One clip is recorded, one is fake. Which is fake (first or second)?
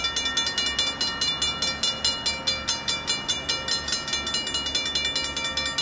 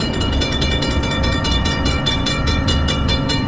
second